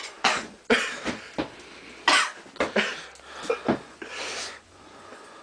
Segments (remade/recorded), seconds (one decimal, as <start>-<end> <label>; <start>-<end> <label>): 0.0-0.6 remade; 0.6-3.8 recorded; 3.8-5.4 remade